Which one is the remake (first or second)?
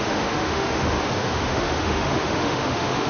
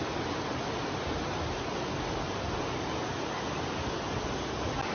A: first